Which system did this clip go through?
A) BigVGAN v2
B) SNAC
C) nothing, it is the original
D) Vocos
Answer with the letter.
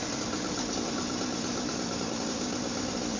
C